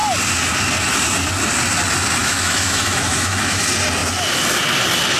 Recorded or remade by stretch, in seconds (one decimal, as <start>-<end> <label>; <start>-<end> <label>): 0.0-2.2 recorded; 2.2-3.6 remade; 3.6-5.2 recorded